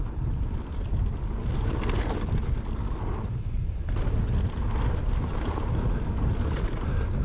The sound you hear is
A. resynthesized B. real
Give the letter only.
B